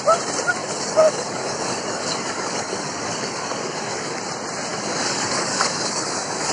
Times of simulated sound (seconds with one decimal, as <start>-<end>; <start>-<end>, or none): 0.6-4.2; 4.7-6.5